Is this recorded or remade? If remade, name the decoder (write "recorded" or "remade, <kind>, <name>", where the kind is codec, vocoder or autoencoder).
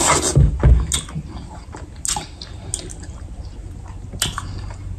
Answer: recorded